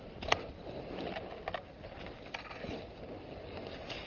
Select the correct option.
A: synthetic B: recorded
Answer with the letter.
B